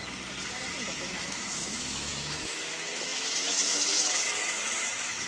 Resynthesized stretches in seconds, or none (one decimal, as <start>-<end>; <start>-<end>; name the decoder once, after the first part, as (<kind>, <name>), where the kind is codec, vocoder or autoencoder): 0.7-5.3 (autoencoder, DAC-VAE)